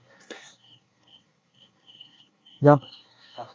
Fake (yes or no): yes